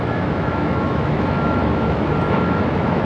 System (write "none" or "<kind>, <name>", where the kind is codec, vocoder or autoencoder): autoencoder, DAC-VAE